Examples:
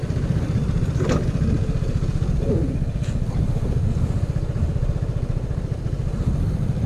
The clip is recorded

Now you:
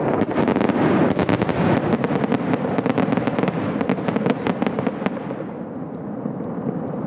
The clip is recorded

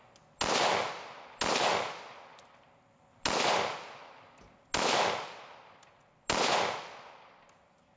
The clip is recorded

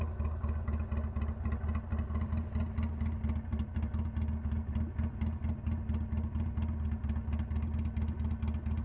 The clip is recorded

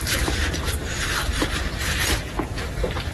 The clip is remade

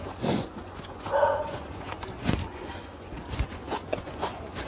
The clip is remade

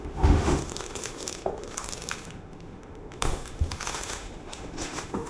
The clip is remade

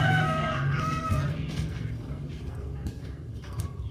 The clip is remade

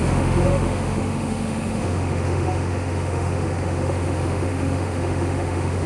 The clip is remade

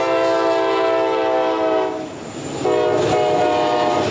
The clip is recorded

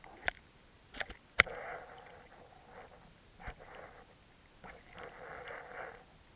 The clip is recorded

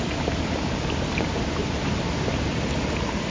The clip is recorded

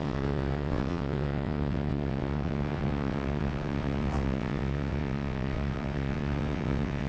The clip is remade